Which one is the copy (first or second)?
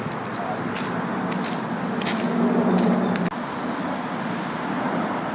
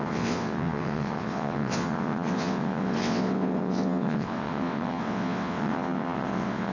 second